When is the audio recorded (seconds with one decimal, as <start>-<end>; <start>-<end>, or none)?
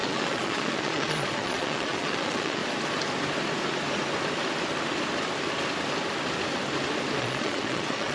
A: 2.6-7.2